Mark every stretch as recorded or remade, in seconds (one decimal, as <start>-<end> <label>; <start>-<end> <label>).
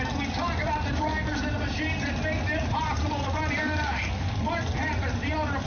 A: 0.0-3.6 recorded; 3.6-4.4 remade; 4.4-5.7 recorded